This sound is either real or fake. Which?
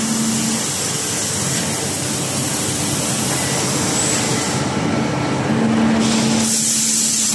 real